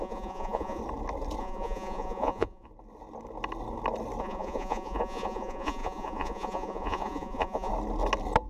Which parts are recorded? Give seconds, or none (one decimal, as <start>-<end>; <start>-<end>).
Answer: 0.8-1.4; 2.7-4.2; 7.7-8.5